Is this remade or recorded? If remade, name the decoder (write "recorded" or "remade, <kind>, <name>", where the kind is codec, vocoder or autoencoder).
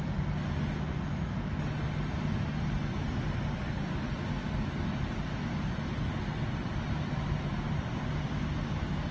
recorded